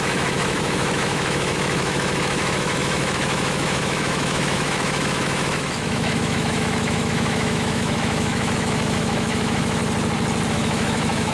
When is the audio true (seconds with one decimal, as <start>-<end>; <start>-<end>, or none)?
9.8-10.5